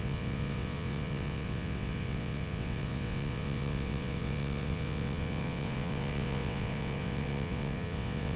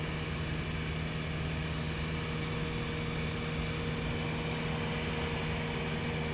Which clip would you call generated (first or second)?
first